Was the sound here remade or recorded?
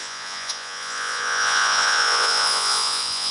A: remade